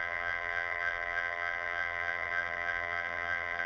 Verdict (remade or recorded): remade